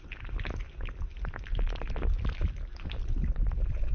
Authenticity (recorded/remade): recorded